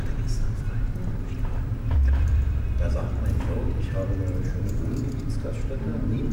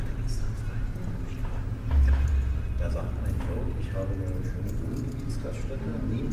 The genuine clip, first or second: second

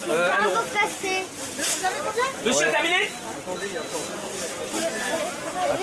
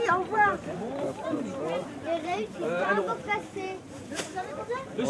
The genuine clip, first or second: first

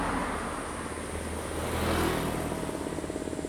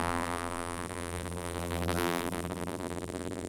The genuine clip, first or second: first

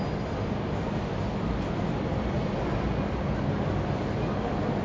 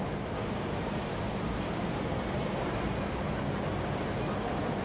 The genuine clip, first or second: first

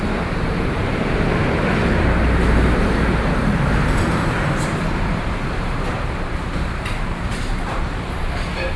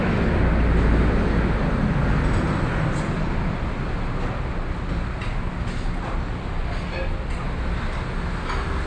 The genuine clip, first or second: second